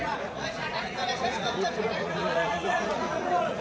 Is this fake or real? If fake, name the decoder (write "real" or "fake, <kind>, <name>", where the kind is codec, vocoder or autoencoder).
fake, vocoder, Vocos